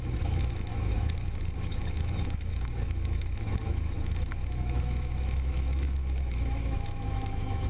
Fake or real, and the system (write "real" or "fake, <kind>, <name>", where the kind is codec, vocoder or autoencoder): fake, autoencoder, DAC-VAE